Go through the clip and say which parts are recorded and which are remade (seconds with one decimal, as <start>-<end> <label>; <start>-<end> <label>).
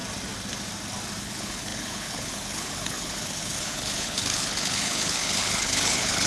0.0-1.2 recorded; 1.2-6.3 remade